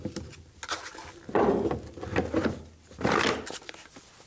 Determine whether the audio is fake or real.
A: real